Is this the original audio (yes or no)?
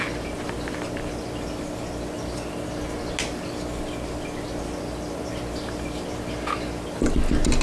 yes